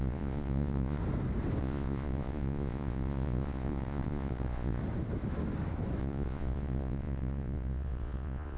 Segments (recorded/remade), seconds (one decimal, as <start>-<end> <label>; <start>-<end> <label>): 0.0-1.0 remade; 1.0-1.6 recorded; 1.6-4.8 remade; 4.8-6.0 recorded; 6.0-8.6 remade